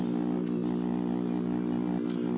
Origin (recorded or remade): recorded